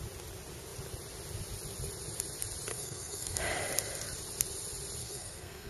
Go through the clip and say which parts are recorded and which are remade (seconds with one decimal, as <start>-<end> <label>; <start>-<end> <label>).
0.0-2.7 recorded; 2.7-3.4 remade; 3.4-5.0 recorded; 5.0-5.7 remade